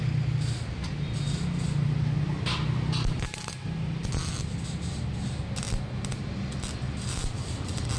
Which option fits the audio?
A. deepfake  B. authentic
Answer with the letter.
B